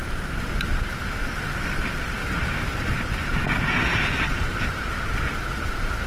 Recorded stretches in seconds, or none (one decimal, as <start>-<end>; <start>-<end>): 1.0-2.2; 2.9-3.9; 4.9-6.1